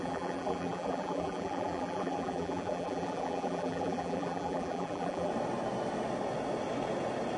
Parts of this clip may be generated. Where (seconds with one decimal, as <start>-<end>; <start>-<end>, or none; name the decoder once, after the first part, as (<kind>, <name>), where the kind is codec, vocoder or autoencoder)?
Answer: 0.0-5.3 (vocoder, BigVGAN v2)